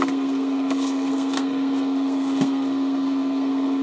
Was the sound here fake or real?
fake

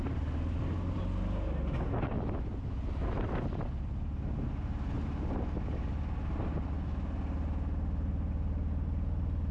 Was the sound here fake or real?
real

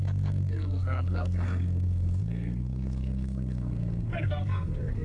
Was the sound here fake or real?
fake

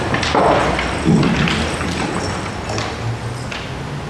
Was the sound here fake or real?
real